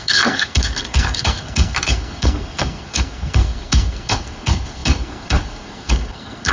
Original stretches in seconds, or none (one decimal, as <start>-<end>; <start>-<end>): none